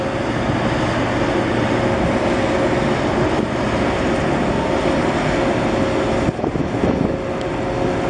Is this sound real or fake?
real